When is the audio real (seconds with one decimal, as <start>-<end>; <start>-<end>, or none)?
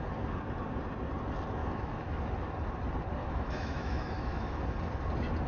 0.0-1.6; 2.2-3.2; 4.6-5.5